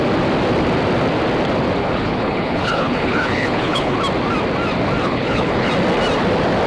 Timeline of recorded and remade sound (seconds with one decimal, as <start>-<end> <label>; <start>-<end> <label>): 0.0-1.8 recorded; 1.8-4.0 remade; 4.0-5.0 recorded; 5.0-5.7 remade; 5.7-6.7 recorded